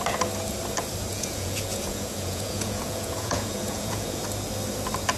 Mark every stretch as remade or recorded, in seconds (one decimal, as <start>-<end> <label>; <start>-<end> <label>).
0.0-1.1 recorded; 1.1-4.2 remade; 4.2-5.2 recorded

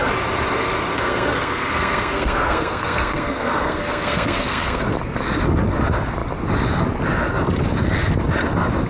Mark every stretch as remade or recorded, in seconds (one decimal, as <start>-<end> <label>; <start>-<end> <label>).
0.0-0.9 recorded; 0.9-4.8 remade; 4.8-8.9 recorded

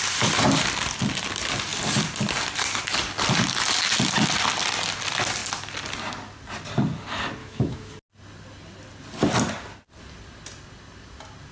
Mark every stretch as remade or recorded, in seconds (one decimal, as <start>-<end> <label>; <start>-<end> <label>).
0.0-7.4 recorded; 7.4-7.9 remade; 7.9-11.5 recorded

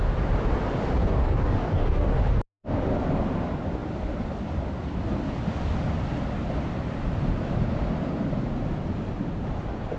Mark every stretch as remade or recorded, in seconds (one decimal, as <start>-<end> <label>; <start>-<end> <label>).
0.0-1.0 recorded; 1.0-2.2 remade; 2.2-10.0 recorded

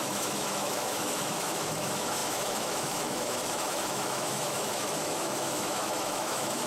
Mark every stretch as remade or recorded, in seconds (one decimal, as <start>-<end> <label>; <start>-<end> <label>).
0.0-6.7 remade

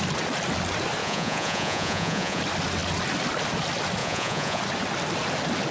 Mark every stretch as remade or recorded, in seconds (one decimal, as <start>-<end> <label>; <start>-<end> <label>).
0.0-1.0 recorded; 1.0-2.4 remade; 2.4-4.0 recorded; 4.0-4.6 remade; 4.6-5.7 recorded

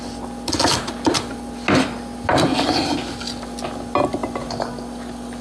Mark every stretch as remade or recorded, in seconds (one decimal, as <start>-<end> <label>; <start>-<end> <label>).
0.0-5.4 recorded